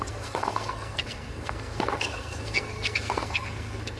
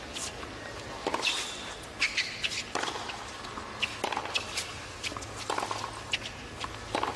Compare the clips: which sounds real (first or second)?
second